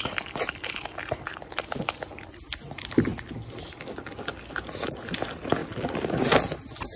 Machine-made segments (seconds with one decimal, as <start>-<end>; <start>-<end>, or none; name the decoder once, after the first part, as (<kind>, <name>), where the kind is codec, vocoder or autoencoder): none